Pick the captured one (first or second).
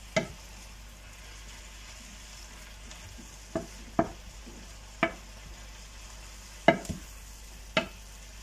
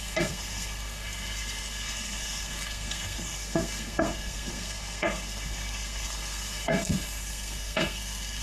first